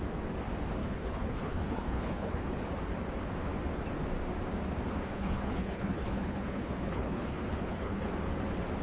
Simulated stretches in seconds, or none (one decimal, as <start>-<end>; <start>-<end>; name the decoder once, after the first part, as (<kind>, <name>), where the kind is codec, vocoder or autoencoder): 0.8-2.6 (codec, HILCodec); 5.1-8.1